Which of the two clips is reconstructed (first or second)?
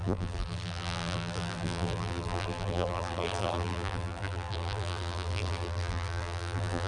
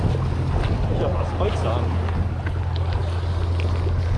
first